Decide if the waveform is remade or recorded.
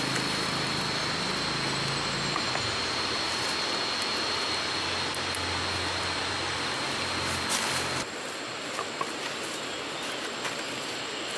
recorded